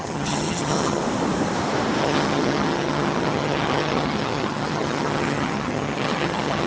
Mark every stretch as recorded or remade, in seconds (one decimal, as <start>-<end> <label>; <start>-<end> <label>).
0.0-1.0 remade; 1.0-2.0 recorded; 2.0-6.7 remade